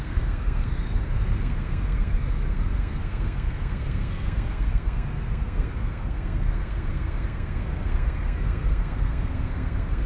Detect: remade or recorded remade